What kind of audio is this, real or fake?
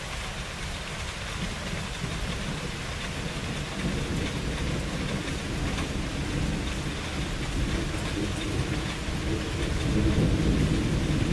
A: real